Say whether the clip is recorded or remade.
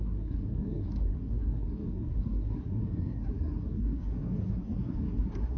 remade